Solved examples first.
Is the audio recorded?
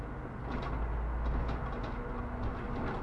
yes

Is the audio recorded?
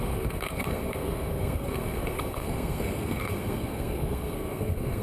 no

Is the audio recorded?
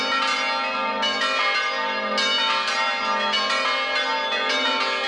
yes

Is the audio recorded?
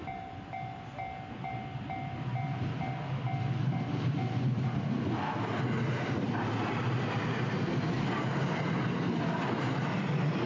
yes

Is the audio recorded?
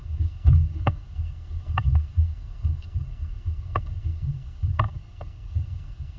no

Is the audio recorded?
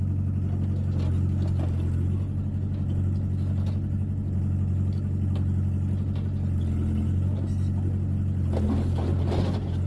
yes